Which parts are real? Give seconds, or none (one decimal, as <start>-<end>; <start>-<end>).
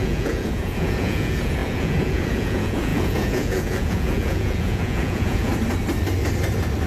5.5-6.9